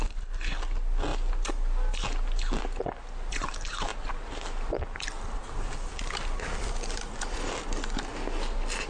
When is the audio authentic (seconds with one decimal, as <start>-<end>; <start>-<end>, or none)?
0.0-8.9